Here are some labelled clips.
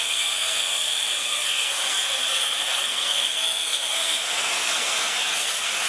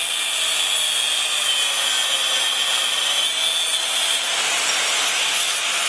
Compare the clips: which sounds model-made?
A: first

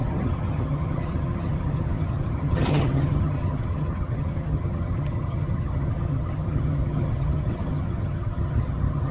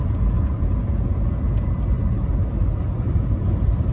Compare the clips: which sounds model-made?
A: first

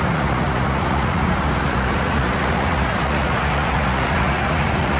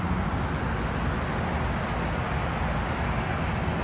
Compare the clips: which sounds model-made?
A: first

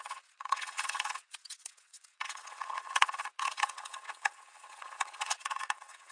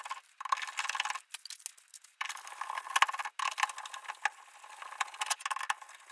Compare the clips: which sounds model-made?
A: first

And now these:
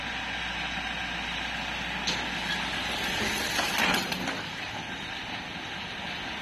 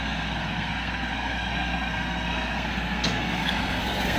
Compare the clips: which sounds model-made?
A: second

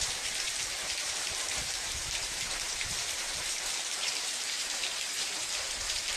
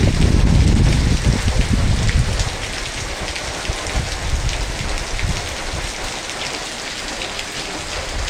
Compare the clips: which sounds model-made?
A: first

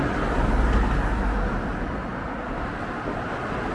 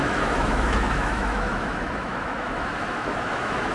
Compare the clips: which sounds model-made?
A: second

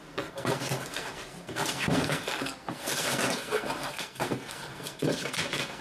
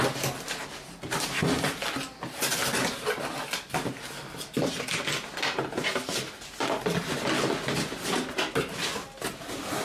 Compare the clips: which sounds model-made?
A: first